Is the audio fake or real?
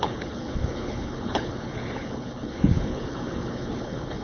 fake